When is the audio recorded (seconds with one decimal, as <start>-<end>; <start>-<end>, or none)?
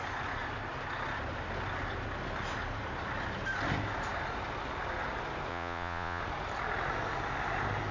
0.0-5.5; 6.2-7.9